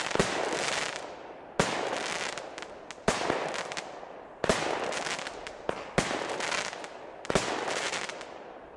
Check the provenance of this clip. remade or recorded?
recorded